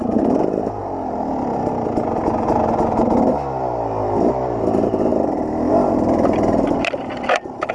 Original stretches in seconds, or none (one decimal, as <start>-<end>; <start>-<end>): 0.8-3.3